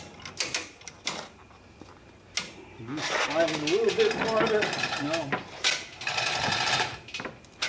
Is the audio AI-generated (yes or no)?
no